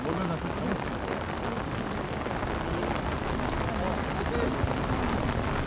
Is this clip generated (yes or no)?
no